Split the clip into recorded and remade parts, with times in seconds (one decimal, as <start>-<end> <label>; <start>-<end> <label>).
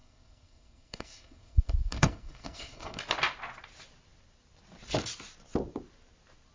0.0-3.0 remade; 3.0-6.5 recorded